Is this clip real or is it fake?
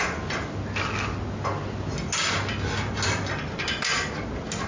real